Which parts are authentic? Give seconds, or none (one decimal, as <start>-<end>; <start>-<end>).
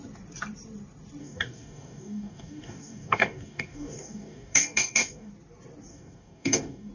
0.0-1.2; 5.3-5.9